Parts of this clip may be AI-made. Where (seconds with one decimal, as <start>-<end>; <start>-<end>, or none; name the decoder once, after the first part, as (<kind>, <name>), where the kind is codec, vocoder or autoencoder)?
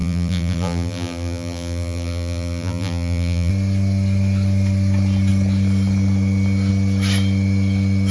0.0-3.5 (vocoder, BigVGAN v2)